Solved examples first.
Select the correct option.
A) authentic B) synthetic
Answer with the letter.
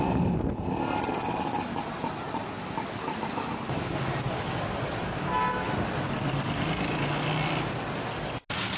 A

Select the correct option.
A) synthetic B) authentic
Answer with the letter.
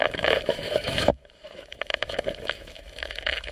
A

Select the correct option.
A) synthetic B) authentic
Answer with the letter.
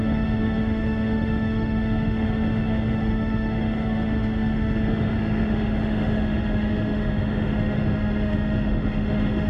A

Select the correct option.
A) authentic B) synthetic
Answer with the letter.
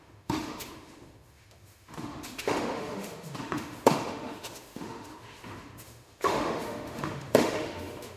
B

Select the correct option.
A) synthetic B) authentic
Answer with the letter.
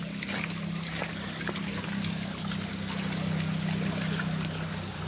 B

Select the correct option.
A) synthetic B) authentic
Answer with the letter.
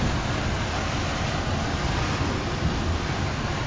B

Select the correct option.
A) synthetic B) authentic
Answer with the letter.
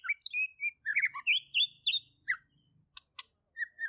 B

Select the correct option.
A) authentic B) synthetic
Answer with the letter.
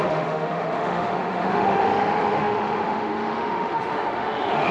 B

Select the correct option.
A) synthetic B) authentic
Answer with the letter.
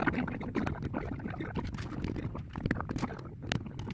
B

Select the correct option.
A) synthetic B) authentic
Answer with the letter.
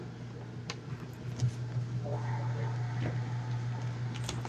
B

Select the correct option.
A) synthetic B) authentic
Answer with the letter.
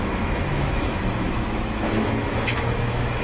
A